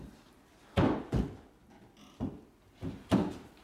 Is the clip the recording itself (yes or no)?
no